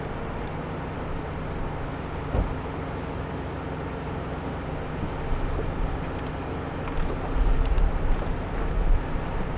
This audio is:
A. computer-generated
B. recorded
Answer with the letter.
B